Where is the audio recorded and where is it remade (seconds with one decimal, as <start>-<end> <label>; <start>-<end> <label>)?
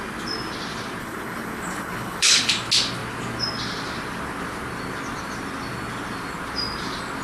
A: 0.0-1.0 recorded; 1.0-2.5 remade; 2.5-7.2 recorded